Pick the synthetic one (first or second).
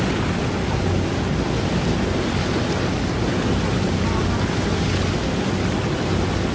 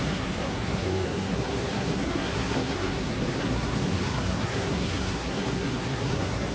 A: second